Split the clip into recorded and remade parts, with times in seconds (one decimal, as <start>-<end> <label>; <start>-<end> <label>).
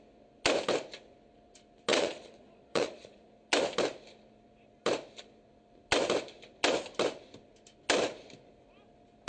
0.0-1.9 recorded; 1.9-3.3 remade; 3.3-9.3 recorded